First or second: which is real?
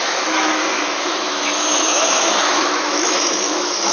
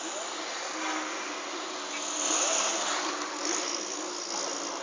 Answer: second